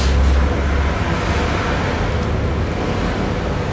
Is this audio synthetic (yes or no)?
no